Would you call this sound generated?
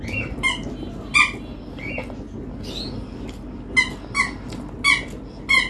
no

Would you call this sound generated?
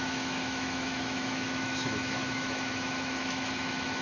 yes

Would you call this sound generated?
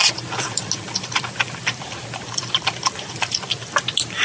no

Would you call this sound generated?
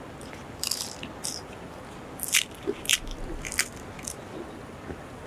no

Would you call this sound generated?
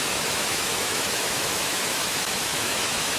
yes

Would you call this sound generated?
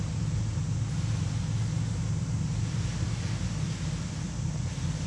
no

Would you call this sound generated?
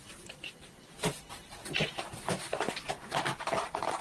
no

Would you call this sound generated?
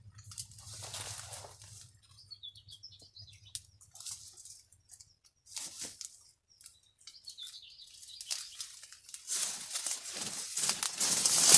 no